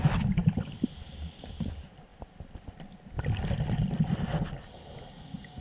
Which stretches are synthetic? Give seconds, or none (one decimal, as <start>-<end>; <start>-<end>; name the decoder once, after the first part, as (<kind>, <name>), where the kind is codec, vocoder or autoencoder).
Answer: none